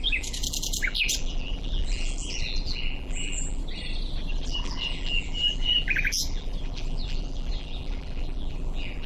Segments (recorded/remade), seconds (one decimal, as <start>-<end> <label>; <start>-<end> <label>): 0.0-3.6 remade; 3.6-4.3 recorded; 4.3-9.1 remade